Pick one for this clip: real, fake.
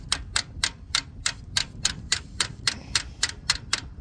fake